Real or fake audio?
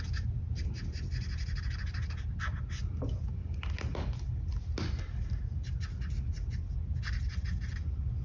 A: real